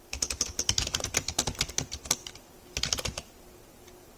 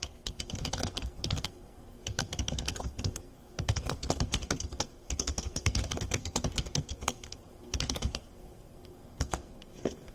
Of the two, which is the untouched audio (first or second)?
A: first